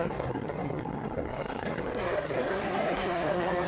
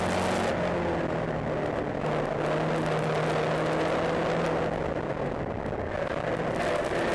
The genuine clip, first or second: second